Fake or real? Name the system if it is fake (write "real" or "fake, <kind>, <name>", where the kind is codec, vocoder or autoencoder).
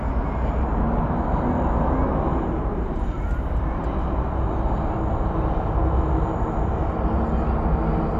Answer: real